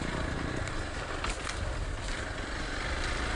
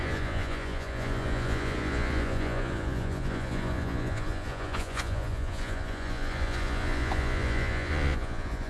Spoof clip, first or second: second